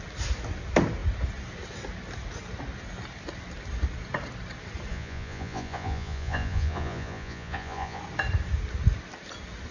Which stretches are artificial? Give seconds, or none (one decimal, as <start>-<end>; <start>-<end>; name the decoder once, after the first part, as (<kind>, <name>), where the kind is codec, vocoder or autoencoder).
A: 4.9-8.0 (vocoder, Vocos)